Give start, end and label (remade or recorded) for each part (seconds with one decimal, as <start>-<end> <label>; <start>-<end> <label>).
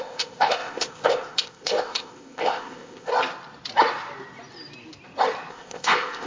0.0-3.1 remade; 3.1-5.5 recorded; 5.5-6.3 remade